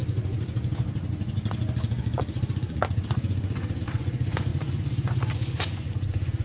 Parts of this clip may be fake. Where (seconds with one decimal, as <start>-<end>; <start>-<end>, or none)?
0.0-6.4